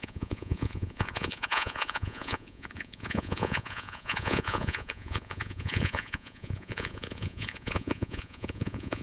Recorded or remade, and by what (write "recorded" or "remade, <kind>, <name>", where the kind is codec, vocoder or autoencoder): remade, vocoder, Vocos